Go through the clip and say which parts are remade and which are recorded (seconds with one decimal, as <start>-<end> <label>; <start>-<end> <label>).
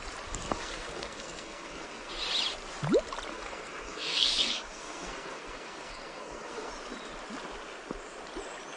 0.0-0.4 recorded; 0.4-2.1 remade; 2.1-3.3 recorded; 3.3-6.7 remade; 6.7-8.8 recorded